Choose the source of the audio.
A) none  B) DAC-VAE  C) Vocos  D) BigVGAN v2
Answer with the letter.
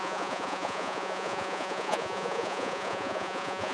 C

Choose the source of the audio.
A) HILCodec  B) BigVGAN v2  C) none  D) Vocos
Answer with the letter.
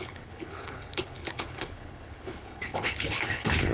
A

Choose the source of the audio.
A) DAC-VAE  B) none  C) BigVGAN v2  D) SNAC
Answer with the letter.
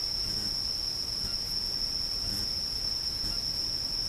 B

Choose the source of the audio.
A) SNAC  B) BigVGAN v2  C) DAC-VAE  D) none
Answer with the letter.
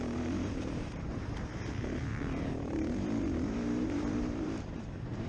B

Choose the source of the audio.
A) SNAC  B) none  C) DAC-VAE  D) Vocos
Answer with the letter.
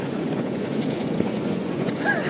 D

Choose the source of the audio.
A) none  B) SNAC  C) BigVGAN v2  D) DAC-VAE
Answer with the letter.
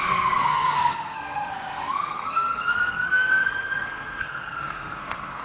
B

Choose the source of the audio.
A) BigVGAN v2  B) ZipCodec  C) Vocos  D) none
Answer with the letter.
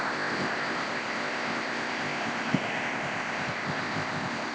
B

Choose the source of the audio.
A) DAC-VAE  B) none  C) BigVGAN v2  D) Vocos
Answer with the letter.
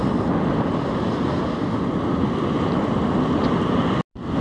B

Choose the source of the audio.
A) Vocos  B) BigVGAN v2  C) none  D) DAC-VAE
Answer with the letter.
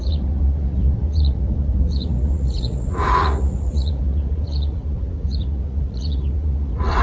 A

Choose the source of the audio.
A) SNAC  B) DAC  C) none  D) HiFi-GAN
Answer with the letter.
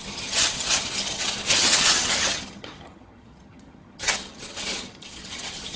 D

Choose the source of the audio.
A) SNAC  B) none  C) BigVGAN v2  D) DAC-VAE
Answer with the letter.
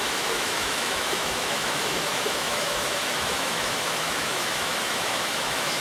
D